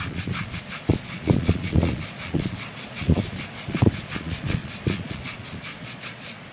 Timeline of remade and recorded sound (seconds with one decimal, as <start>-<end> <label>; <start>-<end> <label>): 0.0-6.5 remade